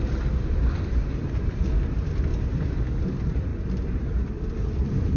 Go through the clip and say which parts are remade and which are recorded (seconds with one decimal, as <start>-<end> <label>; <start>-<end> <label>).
0.0-2.3 remade; 2.3-2.9 recorded; 2.9-3.5 remade; 3.5-4.1 recorded; 4.1-5.2 remade